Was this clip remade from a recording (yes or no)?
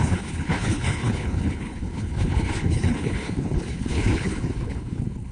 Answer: yes